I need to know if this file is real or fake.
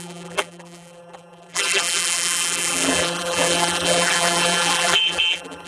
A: fake